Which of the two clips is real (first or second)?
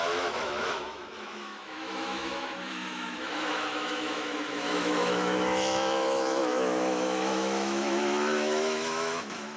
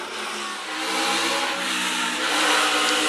second